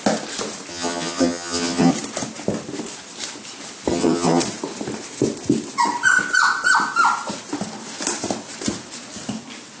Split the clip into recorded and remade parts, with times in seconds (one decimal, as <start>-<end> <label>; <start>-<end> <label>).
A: 0.0-0.7 recorded; 0.7-1.9 remade; 1.9-3.9 recorded; 3.9-4.4 remade; 4.4-9.8 recorded